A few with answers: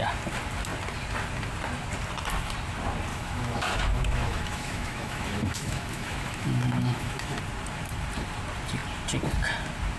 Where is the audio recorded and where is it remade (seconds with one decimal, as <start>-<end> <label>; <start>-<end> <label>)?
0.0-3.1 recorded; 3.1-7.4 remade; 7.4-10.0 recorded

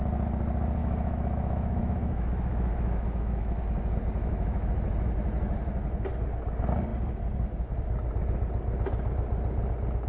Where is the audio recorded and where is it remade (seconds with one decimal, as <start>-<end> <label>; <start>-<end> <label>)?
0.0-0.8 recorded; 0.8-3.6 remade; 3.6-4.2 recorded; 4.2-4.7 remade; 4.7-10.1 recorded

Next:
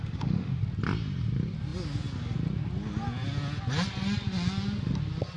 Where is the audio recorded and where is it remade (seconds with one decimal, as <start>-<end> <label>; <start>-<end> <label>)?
0.0-0.6 remade; 0.6-5.4 recorded